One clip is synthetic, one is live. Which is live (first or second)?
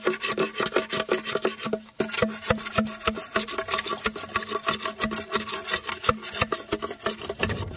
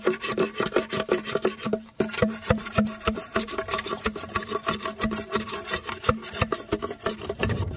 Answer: first